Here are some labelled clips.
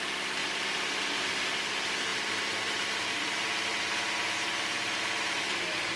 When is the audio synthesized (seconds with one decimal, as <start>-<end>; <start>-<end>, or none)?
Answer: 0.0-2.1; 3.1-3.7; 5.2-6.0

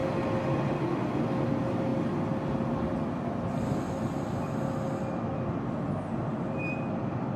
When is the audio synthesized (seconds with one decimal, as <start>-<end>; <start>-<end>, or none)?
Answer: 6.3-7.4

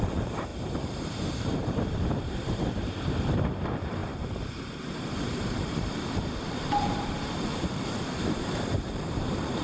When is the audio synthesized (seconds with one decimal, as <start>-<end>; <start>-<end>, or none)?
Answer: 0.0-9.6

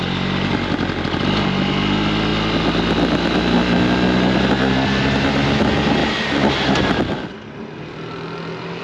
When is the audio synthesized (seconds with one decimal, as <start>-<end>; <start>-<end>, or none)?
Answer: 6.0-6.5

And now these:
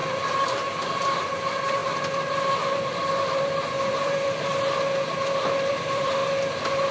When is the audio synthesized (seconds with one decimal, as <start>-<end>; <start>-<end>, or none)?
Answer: 1.0-1.8; 2.6-4.5; 5.4-6.2

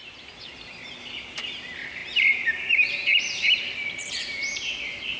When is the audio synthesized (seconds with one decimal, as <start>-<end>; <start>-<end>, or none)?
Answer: 0.0-0.5; 1.3-2.0; 3.2-5.2

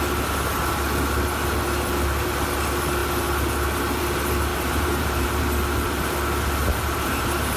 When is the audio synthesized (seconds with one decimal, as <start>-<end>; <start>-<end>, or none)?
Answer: 4.5-5.4; 6.7-7.6

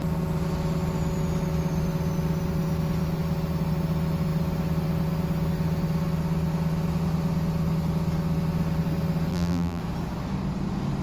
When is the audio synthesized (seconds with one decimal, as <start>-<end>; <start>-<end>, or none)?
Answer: 9.3-9.8